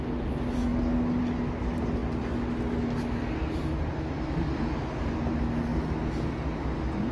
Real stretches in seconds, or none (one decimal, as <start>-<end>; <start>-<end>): 0.0-7.1